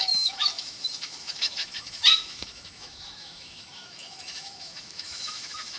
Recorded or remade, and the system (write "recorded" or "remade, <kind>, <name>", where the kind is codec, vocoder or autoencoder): remade, autoencoder, DAC-VAE